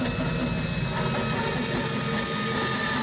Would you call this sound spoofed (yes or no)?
no